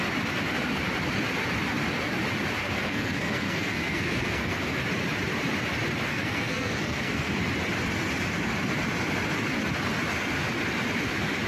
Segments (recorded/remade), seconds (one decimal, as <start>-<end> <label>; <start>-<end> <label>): 0.0-2.6 recorded; 2.6-4.8 remade; 4.8-6.1 recorded; 6.1-7.3 remade; 7.3-11.5 recorded